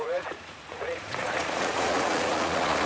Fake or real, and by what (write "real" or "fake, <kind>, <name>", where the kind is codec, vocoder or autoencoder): fake, vocoder, Vocos